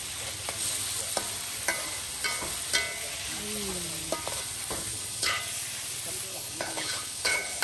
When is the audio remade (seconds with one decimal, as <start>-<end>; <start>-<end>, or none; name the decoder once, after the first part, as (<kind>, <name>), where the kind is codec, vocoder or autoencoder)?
4.9-5.4 (codec, HILCodec); 6.3-7.6

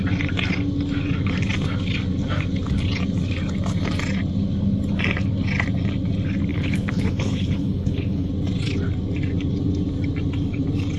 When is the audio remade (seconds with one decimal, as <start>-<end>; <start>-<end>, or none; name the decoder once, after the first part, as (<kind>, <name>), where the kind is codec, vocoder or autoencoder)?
6.5-8.3 (codec, HILCodec)

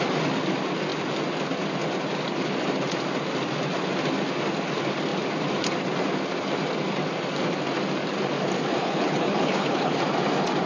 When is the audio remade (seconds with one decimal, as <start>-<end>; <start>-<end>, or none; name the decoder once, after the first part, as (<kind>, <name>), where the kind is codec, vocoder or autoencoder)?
8.8-10.0 (codec, HILCodec)

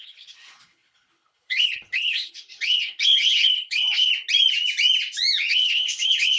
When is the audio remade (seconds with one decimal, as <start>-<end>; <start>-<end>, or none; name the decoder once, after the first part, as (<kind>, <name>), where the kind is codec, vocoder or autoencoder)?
0.0-4.1 (codec, HILCodec); 5.5-6.4

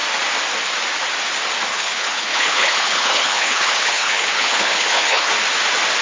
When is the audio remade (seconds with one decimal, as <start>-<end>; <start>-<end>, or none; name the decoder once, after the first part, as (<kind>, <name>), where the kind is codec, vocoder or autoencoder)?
1.7-5.3 (codec, HILCodec)

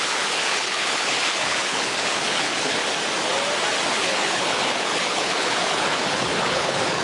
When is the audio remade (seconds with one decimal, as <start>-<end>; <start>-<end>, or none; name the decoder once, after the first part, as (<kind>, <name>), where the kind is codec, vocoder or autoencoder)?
0.0-2.8 (codec, HILCodec); 4.0-7.0

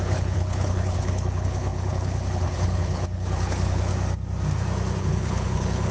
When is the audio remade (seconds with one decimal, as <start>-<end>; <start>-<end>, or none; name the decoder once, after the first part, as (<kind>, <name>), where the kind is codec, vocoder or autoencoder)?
0.0-3.9 (codec, HILCodec); 5.0-5.9